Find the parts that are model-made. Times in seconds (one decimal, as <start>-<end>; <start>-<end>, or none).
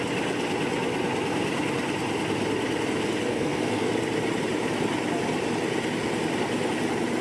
3.3-3.9